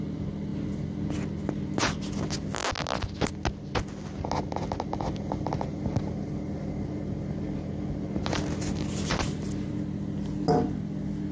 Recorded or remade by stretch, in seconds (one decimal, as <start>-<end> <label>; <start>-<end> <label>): 0.0-11.3 recorded